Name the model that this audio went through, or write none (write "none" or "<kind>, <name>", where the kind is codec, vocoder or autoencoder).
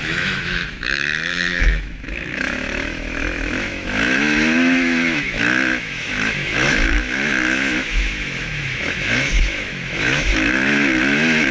autoencoder, DAC-VAE